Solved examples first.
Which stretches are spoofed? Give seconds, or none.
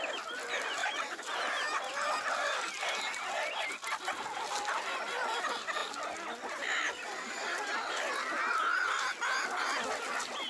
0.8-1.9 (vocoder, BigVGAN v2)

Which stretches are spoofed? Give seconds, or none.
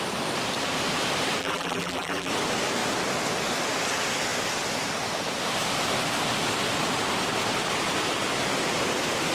1.4-2.3 (vocoder, BigVGAN v2)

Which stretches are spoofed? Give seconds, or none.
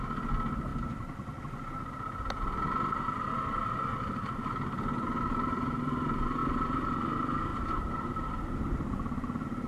7.5-9.7 (vocoder, BigVGAN v2)